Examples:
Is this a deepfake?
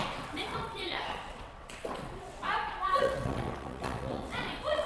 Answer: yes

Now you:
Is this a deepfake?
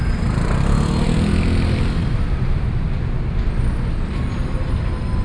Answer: no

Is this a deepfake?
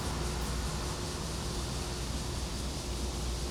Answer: no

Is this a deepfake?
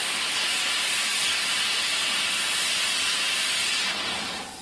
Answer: no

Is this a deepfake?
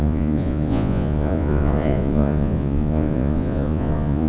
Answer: yes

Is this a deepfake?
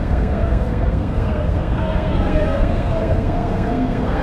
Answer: yes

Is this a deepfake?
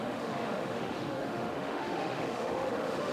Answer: yes